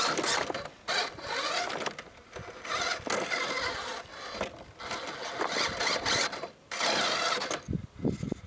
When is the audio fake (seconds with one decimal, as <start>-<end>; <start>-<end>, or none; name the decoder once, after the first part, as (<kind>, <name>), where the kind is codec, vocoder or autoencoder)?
none